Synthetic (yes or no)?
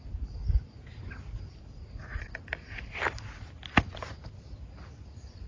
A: no